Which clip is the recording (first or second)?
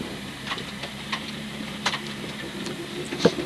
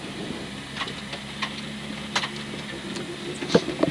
second